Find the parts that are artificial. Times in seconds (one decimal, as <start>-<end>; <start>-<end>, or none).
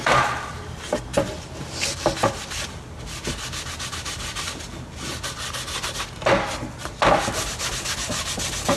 none